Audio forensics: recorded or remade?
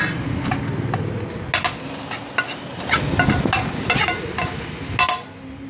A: recorded